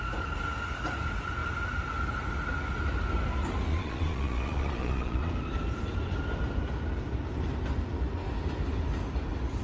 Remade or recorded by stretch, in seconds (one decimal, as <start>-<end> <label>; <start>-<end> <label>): 0.0-3.7 recorded; 3.7-5.3 remade; 5.3-9.6 recorded